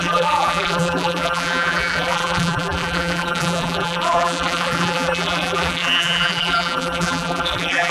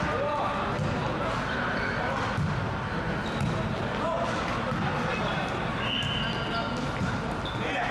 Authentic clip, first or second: second